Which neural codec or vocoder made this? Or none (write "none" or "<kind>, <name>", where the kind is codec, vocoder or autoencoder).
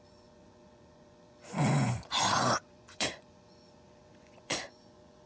vocoder, Vocos